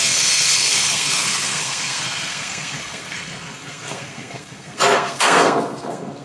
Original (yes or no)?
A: no